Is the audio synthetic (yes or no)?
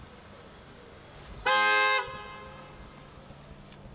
no